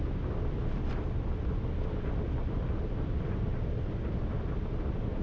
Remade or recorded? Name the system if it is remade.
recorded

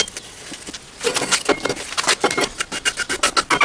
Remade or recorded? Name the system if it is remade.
recorded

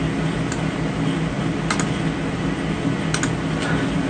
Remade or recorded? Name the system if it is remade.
recorded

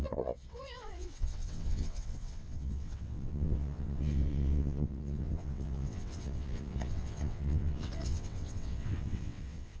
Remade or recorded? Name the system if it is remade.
remade, vocoder, WaveNeXt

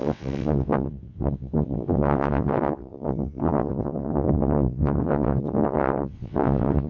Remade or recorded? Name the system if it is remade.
remade, vocoder, WaveNeXt